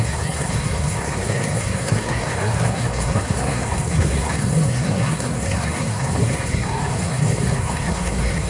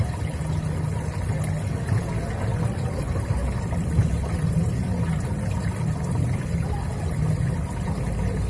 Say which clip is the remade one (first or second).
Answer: first